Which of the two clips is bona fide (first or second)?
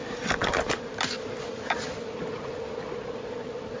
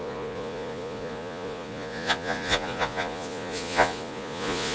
first